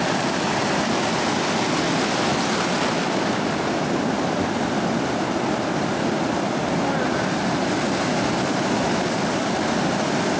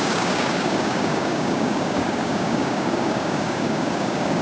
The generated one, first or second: second